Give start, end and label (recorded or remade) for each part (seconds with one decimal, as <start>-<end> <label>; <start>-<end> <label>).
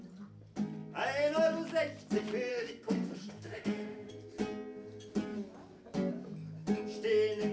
0.0-2.5 recorded; 2.5-4.1 remade; 4.1-7.5 recorded